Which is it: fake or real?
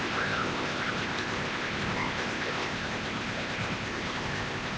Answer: fake